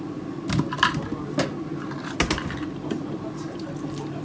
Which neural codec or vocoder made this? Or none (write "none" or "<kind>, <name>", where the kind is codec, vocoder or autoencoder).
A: none